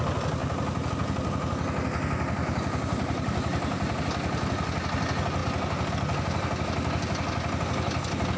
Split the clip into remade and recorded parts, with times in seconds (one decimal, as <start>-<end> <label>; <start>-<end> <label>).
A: 0.0-2.4 recorded; 2.4-4.0 remade; 4.0-8.4 recorded